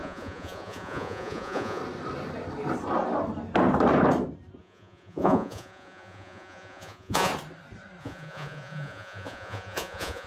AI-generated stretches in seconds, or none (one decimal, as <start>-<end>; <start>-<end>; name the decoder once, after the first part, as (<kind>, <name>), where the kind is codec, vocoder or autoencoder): 0.0-1.8 (vocoder, Vocos); 4.6-7.3; 8.0-10.3